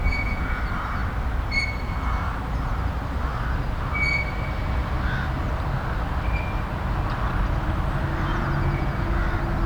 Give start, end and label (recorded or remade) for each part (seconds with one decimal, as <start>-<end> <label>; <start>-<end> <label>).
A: 0.0-0.6 remade; 0.6-8.3 recorded; 8.3-9.0 remade; 9.0-9.7 recorded